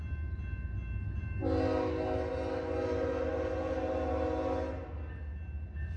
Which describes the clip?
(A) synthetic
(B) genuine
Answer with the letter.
B